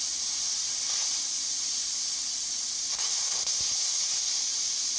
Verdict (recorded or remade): recorded